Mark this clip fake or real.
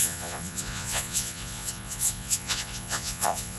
fake